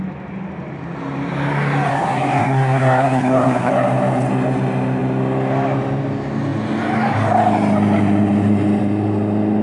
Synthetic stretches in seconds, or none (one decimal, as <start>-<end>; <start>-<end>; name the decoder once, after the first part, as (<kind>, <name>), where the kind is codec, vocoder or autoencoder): 1.9-3.7 (codec, SNAC)